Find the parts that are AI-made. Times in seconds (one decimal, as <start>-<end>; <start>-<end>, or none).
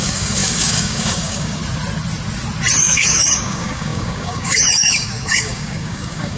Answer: 0.0-1.6; 2.8-6.4